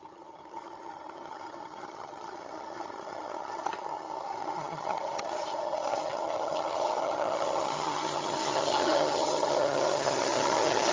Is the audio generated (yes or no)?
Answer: yes